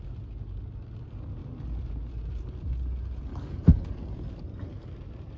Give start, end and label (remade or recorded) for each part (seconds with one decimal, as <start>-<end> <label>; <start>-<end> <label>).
0.0-3.3 recorded; 3.3-3.9 remade; 3.9-5.4 recorded

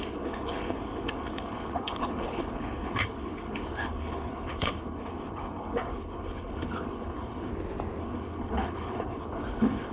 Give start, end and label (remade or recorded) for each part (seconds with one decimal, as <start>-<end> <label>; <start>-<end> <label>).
0.0-7.5 remade; 7.5-8.0 recorded; 8.0-9.9 remade

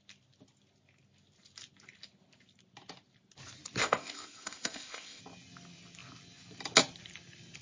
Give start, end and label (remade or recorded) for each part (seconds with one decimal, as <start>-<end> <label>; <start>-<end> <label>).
0.0-3.8 recorded; 3.8-5.2 remade; 5.2-7.6 recorded

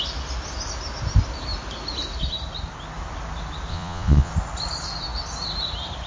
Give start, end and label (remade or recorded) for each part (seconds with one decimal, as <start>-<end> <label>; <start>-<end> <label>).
0.0-3.7 recorded; 3.7-4.3 remade; 4.3-6.1 recorded

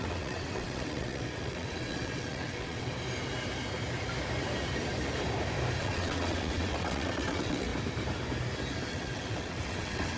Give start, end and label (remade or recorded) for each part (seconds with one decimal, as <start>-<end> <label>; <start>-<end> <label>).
0.0-2.9 remade; 2.9-5.8 recorded; 5.8-7.7 remade; 7.7-8.9 recorded; 8.9-10.2 remade

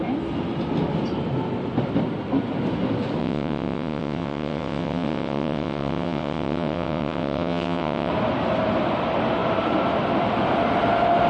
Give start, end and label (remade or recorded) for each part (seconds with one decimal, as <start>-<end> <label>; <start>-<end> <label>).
0.0-3.2 recorded; 3.2-8.1 remade; 8.1-11.3 recorded

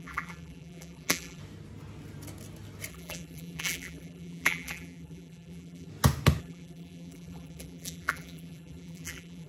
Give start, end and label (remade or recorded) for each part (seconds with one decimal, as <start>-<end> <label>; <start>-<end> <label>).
0.0-1.4 remade; 1.4-2.9 recorded; 2.9-5.9 remade; 5.9-6.4 recorded; 6.4-9.5 remade

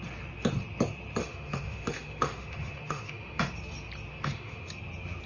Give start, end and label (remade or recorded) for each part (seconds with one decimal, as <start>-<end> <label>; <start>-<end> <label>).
0.0-1.2 recorded; 1.2-3.4 remade; 3.4-4.1 recorded; 4.1-4.7 remade; 4.7-5.3 recorded